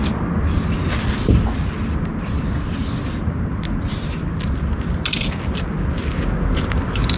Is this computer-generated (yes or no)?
no